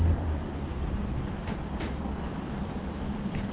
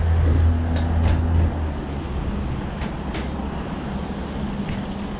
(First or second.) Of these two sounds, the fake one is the first